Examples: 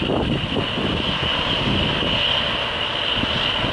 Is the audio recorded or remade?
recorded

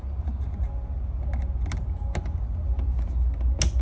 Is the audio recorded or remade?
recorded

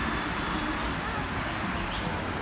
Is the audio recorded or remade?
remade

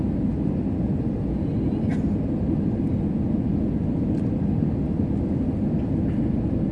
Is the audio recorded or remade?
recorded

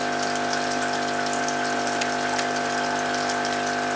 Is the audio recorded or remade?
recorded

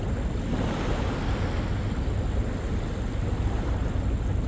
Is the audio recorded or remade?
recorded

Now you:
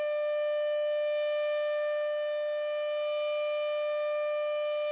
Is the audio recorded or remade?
recorded